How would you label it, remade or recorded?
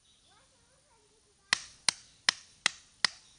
recorded